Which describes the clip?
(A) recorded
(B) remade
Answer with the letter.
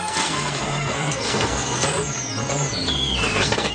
B